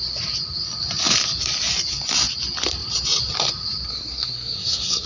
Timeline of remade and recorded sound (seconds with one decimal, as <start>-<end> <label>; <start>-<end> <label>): 0.0-3.9 recorded; 3.9-5.1 remade